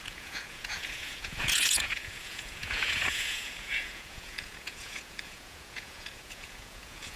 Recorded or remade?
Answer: remade